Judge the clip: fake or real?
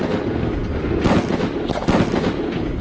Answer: real